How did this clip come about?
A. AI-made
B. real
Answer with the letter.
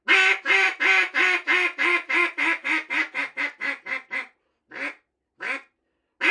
B